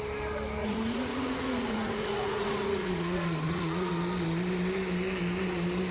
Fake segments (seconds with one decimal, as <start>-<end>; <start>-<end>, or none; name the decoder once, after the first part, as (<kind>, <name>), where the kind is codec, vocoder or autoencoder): 0.6-3.9 (vocoder, Vocos)